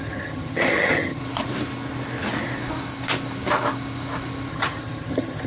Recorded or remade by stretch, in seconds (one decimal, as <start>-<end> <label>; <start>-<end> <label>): 0.0-1.2 remade; 1.2-4.5 recorded; 4.5-5.5 remade